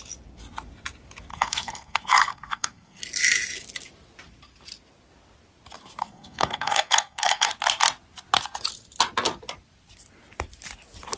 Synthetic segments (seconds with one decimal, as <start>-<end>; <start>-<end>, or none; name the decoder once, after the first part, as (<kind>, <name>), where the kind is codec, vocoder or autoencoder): 1.3-3.0 (codec, SNAC); 6.0-7.5